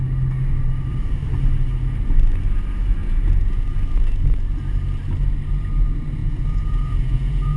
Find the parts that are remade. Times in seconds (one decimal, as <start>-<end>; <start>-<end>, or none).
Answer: 3.0-3.6; 6.2-7.6